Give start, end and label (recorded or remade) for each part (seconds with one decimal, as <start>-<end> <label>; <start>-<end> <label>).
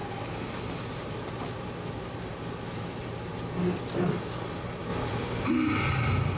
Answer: 0.0-6.4 recorded